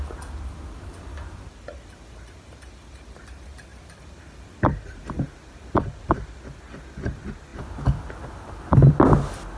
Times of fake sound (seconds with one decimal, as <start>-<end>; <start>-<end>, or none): none